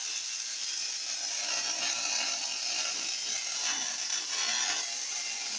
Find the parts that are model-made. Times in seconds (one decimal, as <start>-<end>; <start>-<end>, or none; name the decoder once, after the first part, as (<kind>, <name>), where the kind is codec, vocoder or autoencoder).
none